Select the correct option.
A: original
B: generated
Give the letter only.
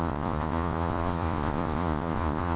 B